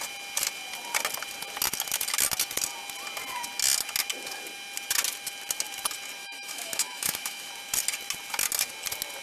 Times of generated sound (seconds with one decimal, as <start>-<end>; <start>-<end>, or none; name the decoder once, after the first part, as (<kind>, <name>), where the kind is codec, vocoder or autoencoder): 6.2-7.5 (autoencoder, DAC-VAE)